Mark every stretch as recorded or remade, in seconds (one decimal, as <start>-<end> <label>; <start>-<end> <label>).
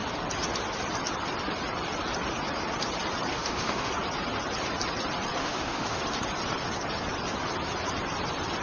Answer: 0.0-3.3 recorded; 3.3-3.9 remade; 3.9-5.4 recorded; 5.4-6.0 remade; 6.0-8.6 recorded